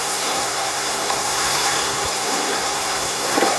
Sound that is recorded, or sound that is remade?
remade